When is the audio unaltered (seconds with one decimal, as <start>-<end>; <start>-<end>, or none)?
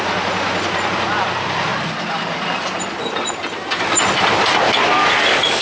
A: 0.0-5.6